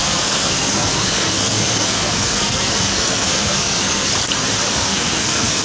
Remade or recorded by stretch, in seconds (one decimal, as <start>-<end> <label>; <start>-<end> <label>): 0.0-4.1 remade; 4.1-4.7 recorded; 4.7-5.6 remade